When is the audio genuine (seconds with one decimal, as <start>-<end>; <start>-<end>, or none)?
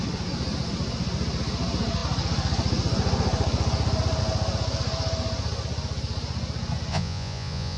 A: 0.0-6.9